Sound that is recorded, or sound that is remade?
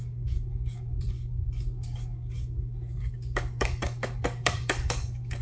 remade